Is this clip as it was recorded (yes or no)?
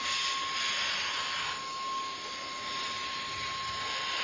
yes